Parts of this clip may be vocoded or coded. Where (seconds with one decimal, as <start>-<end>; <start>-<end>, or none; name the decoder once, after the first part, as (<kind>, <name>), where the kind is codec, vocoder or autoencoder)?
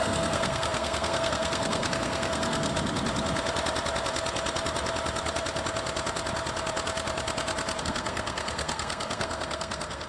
0.0-2.7 (codec, SNAC); 7.8-10.1